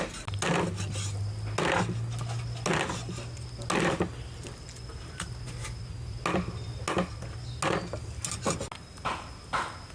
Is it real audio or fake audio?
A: real